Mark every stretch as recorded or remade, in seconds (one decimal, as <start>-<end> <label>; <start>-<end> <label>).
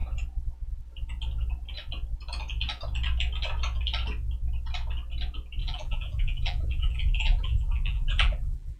0.0-5.6 recorded; 5.6-8.8 remade